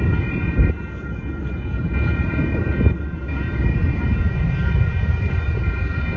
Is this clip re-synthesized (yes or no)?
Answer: no